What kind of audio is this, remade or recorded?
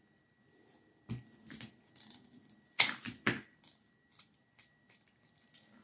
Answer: recorded